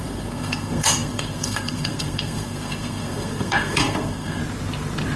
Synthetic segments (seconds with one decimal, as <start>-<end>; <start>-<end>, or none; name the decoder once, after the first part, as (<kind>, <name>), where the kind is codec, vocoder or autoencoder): 0.0-4.4 (codec, SNAC)